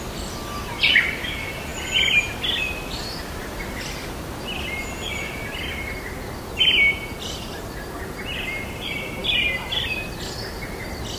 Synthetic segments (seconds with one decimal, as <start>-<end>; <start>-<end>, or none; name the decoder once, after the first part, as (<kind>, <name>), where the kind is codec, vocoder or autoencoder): none